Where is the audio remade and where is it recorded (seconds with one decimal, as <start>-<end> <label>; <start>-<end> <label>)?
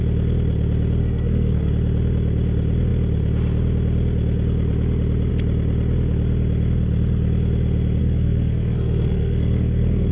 0.0-1.0 recorded; 1.0-1.7 remade; 1.7-8.0 recorded; 8.0-10.1 remade